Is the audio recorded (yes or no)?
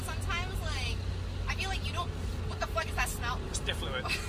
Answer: yes